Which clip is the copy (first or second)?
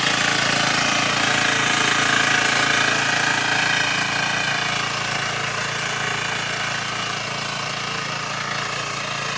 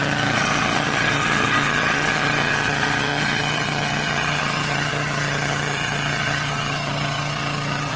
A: second